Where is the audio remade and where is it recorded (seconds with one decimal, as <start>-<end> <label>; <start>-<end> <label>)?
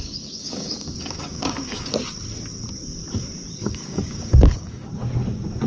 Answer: 0.0-1.9 remade; 1.9-3.6 recorded; 3.6-4.9 remade; 4.9-5.7 recorded